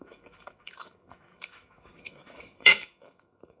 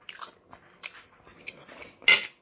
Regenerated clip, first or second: first